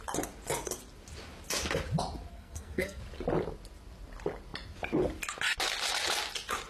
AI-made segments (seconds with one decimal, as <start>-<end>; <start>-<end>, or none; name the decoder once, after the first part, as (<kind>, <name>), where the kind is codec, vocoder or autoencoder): 2.3-3.0 (codec, SNAC)